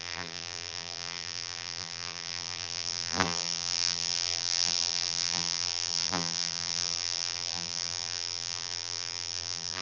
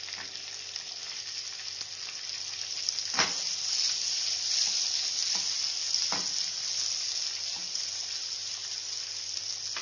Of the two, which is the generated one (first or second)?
first